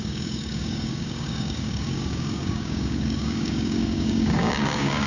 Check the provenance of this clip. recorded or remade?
remade